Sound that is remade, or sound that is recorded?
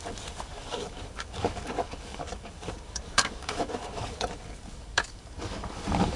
remade